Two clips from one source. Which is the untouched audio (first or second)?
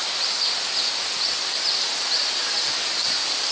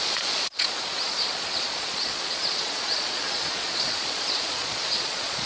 first